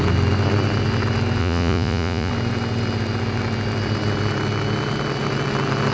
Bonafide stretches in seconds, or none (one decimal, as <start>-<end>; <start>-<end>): 0.0-1.4; 2.3-5.9